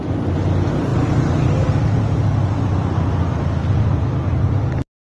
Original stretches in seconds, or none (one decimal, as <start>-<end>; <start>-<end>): 0.0-5.1